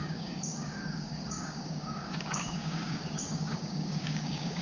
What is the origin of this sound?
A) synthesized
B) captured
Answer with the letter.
A